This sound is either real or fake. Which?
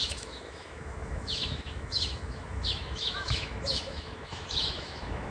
fake